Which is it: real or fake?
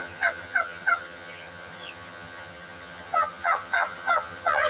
fake